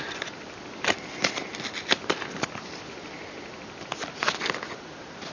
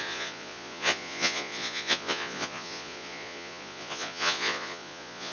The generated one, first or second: second